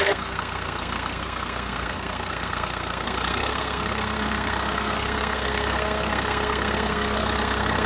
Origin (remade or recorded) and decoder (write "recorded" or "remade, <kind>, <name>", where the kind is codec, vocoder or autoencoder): remade, codec, SNAC